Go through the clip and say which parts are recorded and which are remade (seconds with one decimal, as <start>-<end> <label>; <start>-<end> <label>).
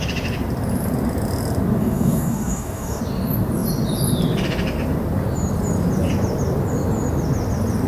0.0-1.8 recorded; 1.8-3.0 remade; 3.0-7.9 recorded